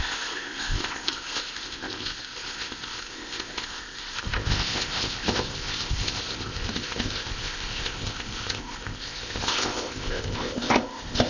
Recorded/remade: remade